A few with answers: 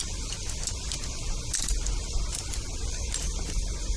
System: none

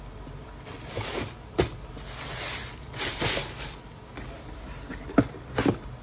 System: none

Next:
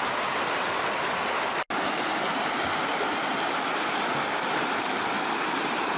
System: none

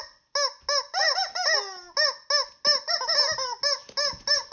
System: none